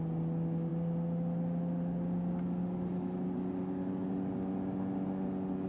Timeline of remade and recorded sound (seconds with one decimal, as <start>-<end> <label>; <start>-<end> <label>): 0.0-5.7 recorded